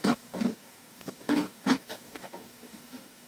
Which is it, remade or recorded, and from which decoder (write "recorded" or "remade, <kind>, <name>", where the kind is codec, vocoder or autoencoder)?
remade, codec, DAC